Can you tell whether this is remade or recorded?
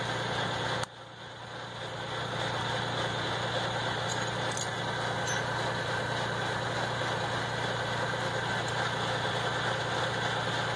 recorded